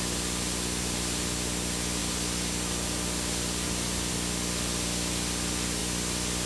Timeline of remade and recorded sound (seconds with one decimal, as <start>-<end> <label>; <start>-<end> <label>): 0.0-6.5 recorded